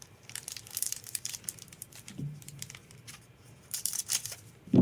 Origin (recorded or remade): remade